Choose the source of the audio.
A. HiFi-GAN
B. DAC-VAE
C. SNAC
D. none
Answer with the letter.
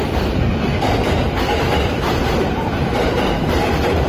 D